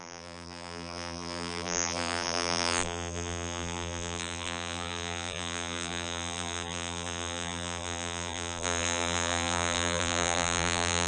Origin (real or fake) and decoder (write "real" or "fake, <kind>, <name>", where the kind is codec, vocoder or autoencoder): fake, vocoder, BigVGAN v2